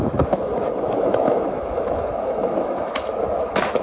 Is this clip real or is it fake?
fake